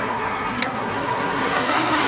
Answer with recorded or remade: remade